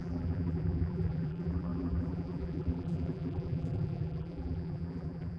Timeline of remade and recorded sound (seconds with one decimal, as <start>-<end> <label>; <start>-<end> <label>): 0.0-5.4 remade